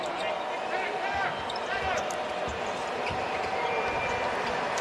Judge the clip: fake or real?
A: real